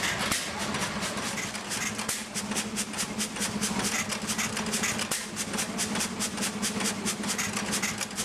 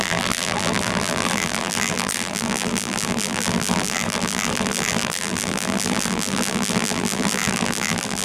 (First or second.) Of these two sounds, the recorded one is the first